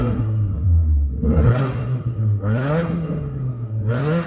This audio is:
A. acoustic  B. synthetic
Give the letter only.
B